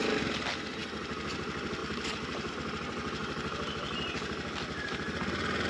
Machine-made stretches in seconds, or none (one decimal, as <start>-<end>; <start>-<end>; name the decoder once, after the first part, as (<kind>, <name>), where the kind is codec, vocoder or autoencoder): 1.8-2.5 (vocoder, BigVGAN v2); 3.2-5.0